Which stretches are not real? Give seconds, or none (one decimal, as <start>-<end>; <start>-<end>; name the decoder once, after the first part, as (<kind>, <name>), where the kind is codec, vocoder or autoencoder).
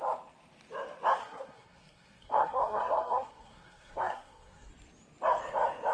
1.2-4.7 (codec, SNAC)